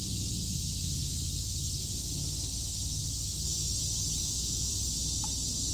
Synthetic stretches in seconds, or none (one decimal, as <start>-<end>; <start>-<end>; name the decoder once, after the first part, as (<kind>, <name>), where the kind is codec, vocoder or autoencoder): 1.0-1.9 (autoencoder, DAC-VAE); 3.0-3.8; 4.2-4.7